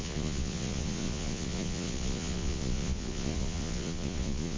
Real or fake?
fake